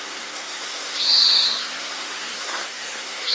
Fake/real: fake